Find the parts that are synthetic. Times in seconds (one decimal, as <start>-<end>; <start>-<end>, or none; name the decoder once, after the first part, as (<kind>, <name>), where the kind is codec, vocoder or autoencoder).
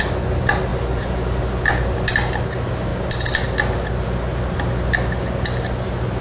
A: 0.7-1.4 (vocoder, BigVGAN v2)